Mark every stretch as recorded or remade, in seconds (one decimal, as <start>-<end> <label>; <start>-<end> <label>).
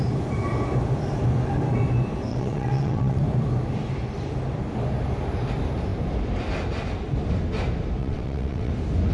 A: 0.0-2.3 recorded; 2.3-3.2 remade; 3.2-8.0 recorded; 8.0-8.7 remade; 8.7-9.1 recorded